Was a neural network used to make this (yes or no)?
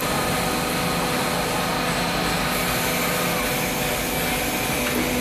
no